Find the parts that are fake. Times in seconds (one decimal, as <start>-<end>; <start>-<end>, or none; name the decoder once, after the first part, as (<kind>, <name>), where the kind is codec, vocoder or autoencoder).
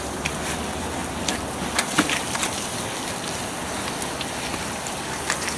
none